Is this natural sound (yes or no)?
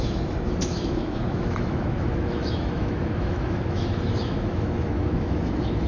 no